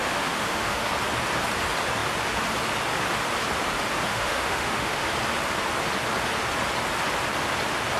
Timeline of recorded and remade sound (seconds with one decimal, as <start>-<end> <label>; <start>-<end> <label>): 0.0-0.9 remade; 0.9-4.1 recorded; 4.1-5.1 remade; 5.1-8.0 recorded